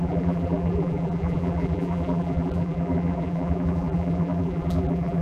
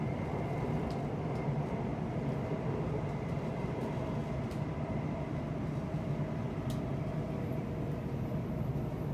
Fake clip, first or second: first